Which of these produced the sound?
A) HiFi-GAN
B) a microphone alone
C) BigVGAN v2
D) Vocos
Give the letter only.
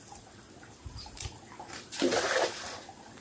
C